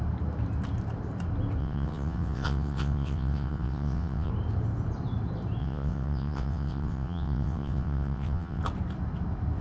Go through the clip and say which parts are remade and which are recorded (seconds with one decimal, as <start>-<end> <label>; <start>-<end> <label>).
0.0-1.6 recorded; 1.6-4.3 remade; 4.3-5.6 recorded; 5.6-8.6 remade; 8.6-9.6 recorded